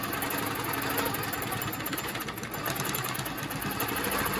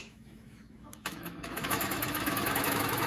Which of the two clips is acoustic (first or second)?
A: first